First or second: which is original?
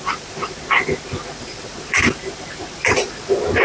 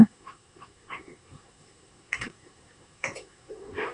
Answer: first